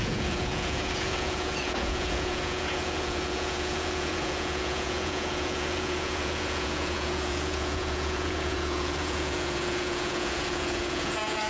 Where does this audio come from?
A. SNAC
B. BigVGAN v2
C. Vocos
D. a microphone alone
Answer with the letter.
C